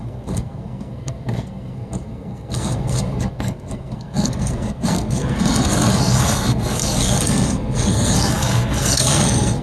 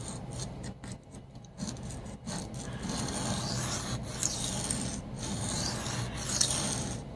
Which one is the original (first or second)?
second